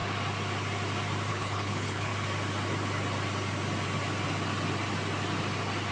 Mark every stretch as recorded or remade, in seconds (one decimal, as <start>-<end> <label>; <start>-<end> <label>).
0.0-1.3 recorded; 1.3-2.1 remade; 2.1-5.9 recorded